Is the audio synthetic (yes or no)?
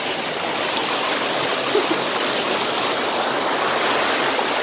no